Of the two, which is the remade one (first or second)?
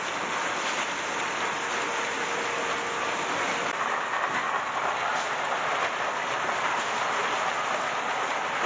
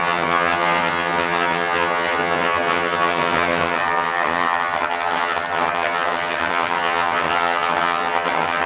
second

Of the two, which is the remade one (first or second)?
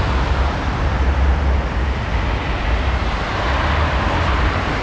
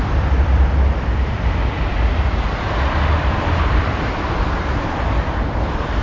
second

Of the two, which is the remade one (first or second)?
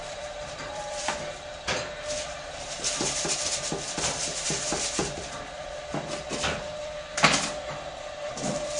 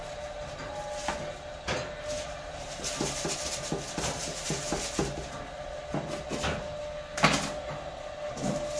first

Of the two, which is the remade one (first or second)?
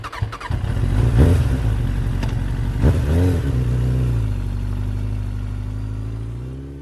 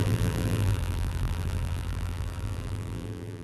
second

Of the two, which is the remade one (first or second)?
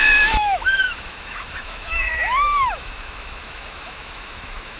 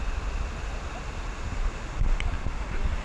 first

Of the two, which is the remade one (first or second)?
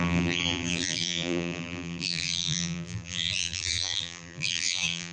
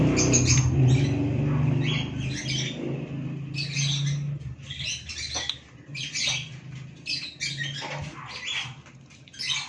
first